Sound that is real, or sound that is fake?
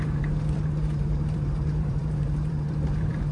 fake